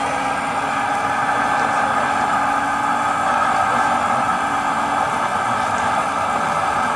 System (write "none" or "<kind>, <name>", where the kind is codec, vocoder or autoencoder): none